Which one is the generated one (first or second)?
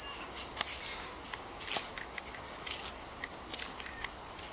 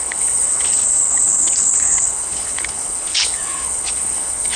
second